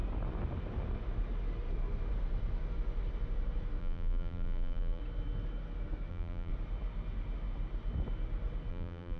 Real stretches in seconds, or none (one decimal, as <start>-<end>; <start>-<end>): 0.0-3.8; 5.0-6.1; 6.5-8.7